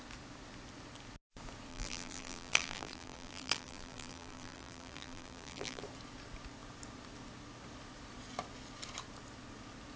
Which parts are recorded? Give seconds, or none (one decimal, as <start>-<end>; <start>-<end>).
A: 0.0-1.7; 5.8-10.0